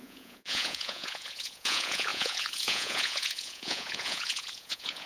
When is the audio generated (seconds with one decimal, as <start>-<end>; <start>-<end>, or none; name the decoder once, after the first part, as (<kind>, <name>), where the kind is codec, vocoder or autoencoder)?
0.0-5.1 (vocoder, Vocos)